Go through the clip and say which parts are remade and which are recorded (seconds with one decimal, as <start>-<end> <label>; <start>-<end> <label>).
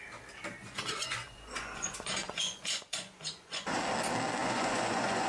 0.0-0.6 recorded; 0.6-3.8 remade; 3.8-4.4 recorded; 4.4-5.3 remade